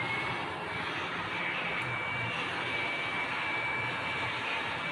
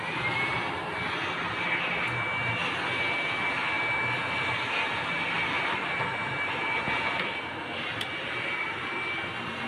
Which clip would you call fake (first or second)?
first